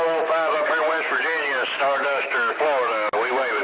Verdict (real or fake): fake